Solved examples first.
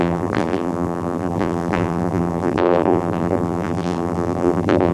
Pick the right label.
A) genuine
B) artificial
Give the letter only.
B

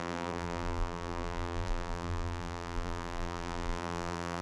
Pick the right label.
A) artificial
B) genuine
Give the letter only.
A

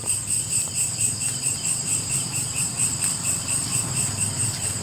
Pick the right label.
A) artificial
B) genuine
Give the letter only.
A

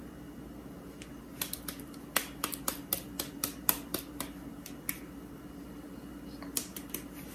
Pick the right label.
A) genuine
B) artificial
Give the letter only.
A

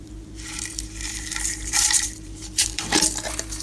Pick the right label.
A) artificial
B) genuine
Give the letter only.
A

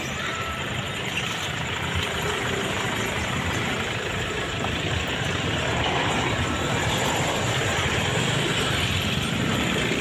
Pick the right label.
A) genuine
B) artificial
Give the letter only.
B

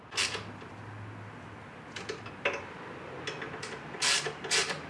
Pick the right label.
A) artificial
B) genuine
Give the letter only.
B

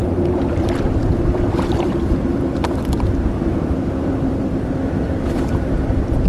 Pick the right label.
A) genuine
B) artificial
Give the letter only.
B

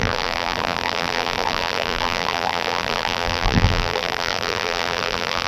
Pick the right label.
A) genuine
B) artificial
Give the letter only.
B